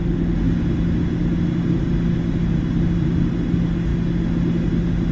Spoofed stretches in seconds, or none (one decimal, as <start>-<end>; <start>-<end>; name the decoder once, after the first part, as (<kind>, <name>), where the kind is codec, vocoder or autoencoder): none